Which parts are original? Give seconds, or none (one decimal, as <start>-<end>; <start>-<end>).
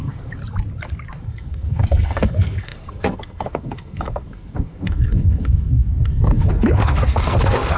0.4-1.1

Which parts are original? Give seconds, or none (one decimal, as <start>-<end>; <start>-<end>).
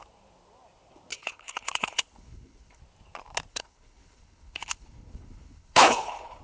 0.0-1.1; 2.8-3.5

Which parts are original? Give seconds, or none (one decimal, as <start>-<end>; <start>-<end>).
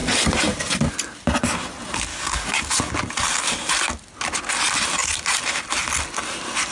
0.0-2.1; 2.8-6.7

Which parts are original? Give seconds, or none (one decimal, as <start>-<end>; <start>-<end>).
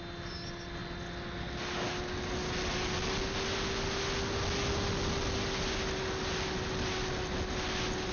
0.0-8.1